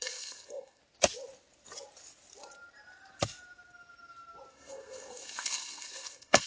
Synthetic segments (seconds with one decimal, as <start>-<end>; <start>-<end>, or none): 0.0-0.8; 4.5-6.5